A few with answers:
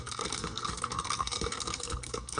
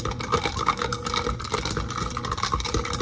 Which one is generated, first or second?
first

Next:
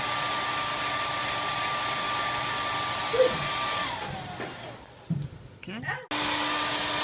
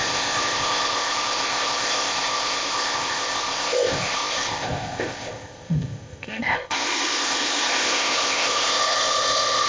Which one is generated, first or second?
second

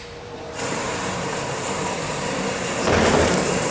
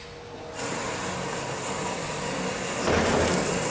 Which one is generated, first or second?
first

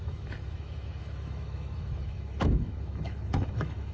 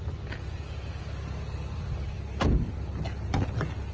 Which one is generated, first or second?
first